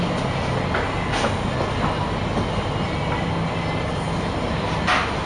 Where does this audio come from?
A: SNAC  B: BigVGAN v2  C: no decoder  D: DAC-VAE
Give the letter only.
C